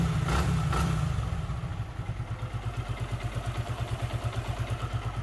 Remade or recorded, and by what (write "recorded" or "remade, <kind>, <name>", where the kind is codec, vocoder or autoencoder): recorded